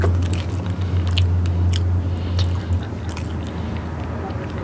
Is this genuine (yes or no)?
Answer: yes